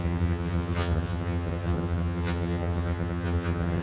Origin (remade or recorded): remade